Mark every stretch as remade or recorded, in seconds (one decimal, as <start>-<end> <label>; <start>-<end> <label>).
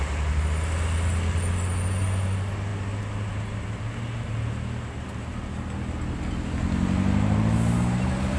0.0-8.4 recorded